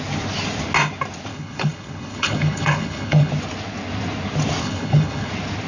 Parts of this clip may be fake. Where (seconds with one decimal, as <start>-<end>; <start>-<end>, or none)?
1.3-3.3; 4.6-5.3